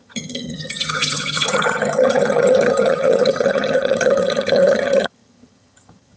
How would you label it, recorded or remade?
remade